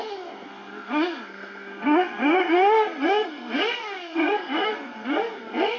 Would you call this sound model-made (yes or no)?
yes